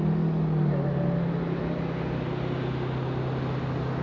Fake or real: real